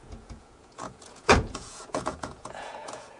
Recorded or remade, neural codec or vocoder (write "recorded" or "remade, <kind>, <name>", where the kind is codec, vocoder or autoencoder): remade, vocoder, Vocos